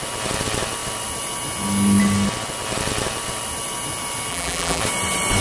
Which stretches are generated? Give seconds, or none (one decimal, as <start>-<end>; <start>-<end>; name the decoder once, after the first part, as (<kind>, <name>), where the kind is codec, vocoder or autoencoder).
4.3-4.8 (vocoder, BigVGAN v2)